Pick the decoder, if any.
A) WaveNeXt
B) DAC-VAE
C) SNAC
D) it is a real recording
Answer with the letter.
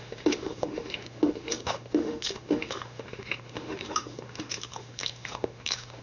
B